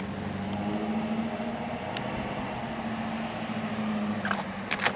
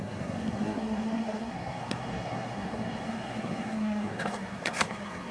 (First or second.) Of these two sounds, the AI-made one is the second